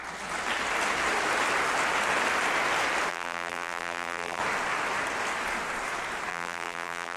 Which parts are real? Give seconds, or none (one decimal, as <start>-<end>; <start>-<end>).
0.0-3.1; 4.4-6.3